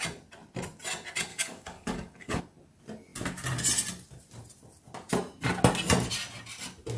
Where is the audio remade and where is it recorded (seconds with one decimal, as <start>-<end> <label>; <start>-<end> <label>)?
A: 0.0-1.3 recorded; 1.3-2.4 remade; 2.4-7.0 recorded